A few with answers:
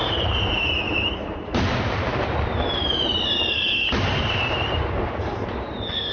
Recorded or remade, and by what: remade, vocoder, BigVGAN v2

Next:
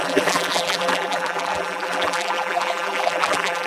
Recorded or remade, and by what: remade, vocoder, BigVGAN v2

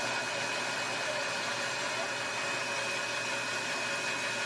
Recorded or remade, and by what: recorded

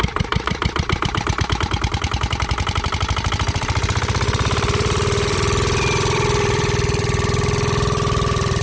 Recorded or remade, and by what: remade, vocoder, BigVGAN v2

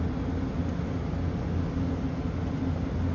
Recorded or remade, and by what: recorded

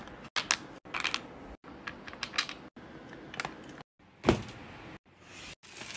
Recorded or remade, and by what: recorded